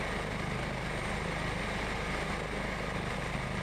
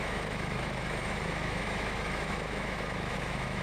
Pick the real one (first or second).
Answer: first